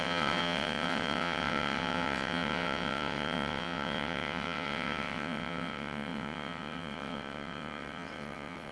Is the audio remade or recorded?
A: remade